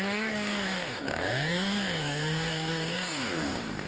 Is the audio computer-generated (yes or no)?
yes